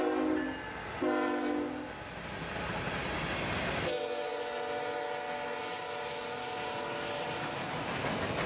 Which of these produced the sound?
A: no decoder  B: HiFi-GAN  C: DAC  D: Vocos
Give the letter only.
A